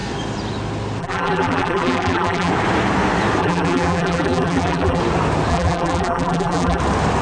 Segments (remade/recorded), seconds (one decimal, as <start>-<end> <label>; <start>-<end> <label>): 0.0-1.0 recorded; 1.0-2.5 remade; 2.5-3.4 recorded; 3.4-5.0 remade; 5.0-5.5 recorded; 5.5-6.8 remade; 6.8-7.2 recorded